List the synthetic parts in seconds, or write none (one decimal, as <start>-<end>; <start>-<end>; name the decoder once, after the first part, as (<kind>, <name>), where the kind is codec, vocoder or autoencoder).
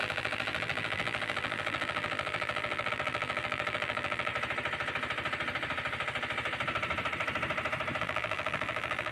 0.0-4.3 (vocoder, BigVGAN v2); 8.0-9.1